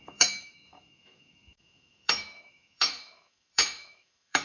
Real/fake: fake